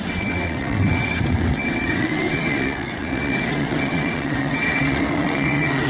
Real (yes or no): no